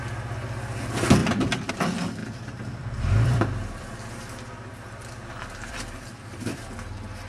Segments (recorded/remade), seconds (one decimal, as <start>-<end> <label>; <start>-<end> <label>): 0.0-1.2 recorded; 1.2-1.7 remade; 1.7-2.2 recorded; 2.2-6.6 remade; 6.6-7.3 recorded